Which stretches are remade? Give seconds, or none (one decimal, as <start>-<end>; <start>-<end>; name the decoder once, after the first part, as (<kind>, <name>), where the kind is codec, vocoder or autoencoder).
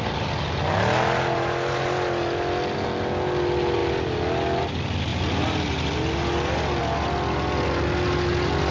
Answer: none